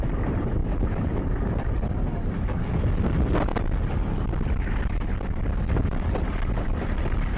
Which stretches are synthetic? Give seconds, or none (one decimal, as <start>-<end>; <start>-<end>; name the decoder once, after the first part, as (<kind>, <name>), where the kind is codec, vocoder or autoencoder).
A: none